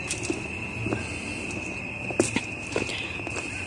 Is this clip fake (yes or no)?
no